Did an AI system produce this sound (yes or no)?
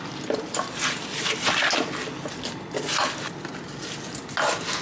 no